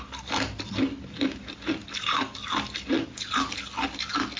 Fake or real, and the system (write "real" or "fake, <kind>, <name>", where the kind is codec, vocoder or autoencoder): real